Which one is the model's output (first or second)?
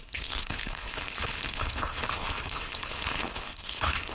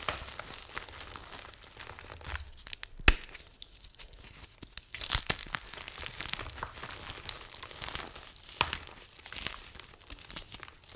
first